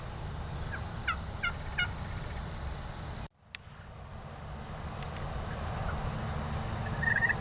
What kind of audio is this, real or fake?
real